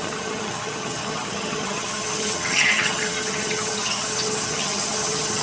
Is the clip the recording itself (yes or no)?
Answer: no